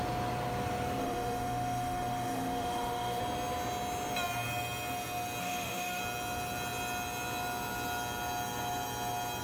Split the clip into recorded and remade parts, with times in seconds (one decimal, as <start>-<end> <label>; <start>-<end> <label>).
0.0-1.0 recorded; 1.0-3.2 remade; 3.2-5.4 recorded; 5.4-6.0 remade; 6.0-9.4 recorded